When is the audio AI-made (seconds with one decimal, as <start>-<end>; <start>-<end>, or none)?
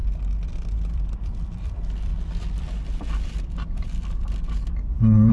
0.9-2.1